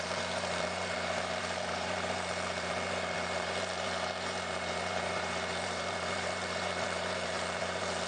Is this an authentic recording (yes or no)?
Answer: no